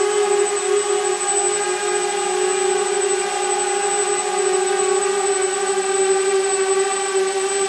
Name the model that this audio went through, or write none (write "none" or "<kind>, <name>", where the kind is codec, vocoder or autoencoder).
none